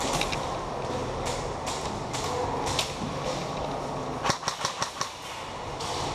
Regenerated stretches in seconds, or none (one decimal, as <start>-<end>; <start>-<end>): none